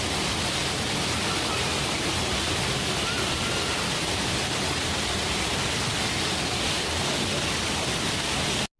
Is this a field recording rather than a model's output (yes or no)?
yes